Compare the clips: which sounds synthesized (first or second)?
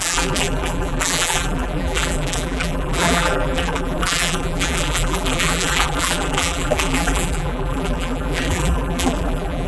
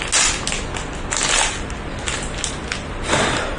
first